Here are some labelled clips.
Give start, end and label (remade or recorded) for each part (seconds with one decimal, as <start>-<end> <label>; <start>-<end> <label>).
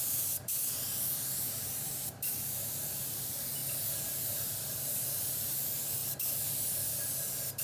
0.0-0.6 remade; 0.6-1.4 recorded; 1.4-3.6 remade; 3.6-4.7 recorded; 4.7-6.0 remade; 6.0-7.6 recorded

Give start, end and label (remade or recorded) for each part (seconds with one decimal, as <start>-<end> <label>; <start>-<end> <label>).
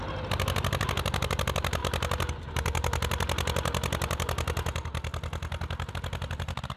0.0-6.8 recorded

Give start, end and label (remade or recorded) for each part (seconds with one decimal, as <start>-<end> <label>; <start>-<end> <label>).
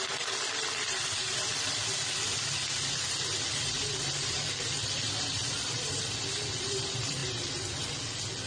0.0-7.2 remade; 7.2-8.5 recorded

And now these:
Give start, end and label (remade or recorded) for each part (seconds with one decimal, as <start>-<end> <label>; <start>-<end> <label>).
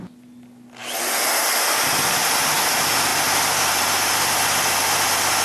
0.0-5.4 recorded